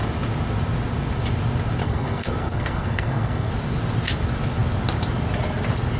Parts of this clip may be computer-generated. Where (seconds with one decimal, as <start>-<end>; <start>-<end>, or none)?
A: 1.8-3.5